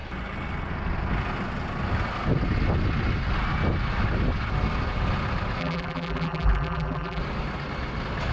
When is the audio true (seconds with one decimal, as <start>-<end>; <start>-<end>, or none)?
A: 0.0-5.6; 7.2-8.3